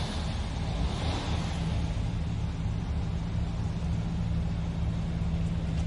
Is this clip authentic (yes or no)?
yes